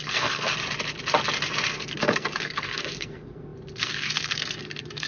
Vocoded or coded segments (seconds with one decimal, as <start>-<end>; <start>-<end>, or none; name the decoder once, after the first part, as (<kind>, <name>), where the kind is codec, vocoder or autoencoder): 0.0-0.5 (codec, SNAC); 1.7-5.1